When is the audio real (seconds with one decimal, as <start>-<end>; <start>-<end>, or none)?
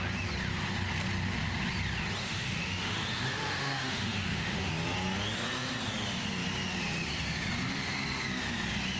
0.0-2.2; 4.7-9.0